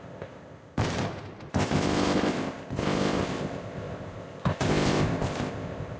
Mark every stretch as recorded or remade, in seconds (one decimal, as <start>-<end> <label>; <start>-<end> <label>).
0.0-0.8 remade; 0.8-1.5 recorded; 1.5-6.0 remade